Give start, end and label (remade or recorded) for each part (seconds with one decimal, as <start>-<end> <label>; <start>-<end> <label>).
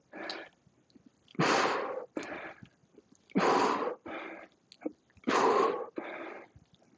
0.0-7.0 recorded